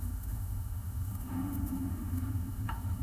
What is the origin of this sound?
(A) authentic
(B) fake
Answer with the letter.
B